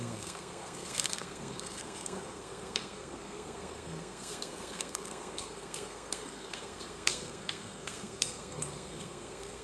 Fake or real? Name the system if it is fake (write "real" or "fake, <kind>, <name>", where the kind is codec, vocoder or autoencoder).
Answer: fake, codec, SNAC